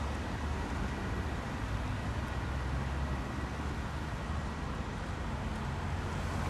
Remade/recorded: recorded